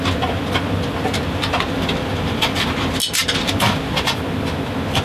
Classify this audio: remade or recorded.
remade